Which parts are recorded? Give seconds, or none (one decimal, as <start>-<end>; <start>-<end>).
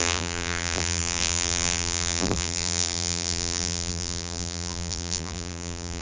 none